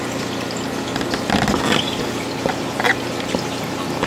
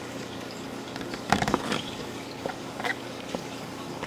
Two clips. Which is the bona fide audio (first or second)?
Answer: first